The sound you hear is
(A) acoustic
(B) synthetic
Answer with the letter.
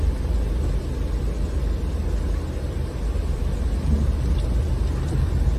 A